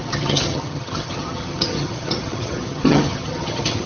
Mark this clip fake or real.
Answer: fake